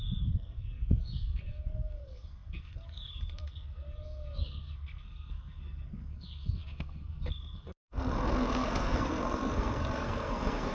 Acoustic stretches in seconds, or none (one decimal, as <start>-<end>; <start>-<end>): none